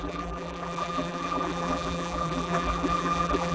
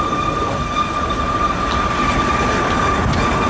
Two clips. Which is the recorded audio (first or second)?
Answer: second